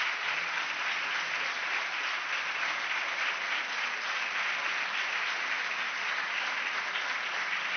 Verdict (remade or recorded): recorded